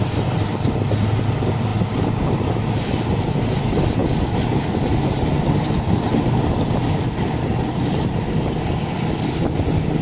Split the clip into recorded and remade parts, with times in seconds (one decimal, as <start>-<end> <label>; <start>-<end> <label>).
0.0-10.0 recorded